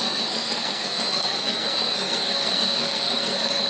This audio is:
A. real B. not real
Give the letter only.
B